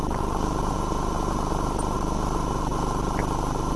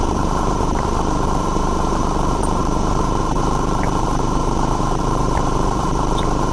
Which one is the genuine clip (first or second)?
first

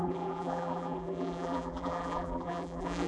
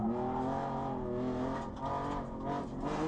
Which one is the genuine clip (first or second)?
second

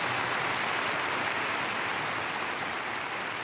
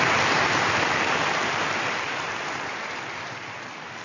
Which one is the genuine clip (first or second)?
first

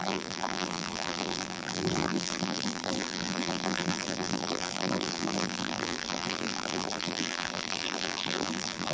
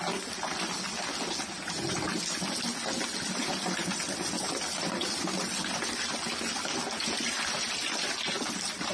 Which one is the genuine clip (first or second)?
second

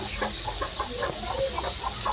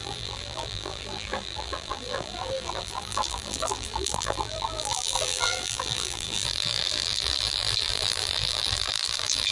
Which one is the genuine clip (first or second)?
first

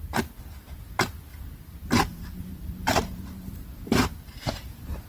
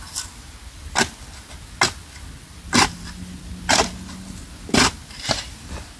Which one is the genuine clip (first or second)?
second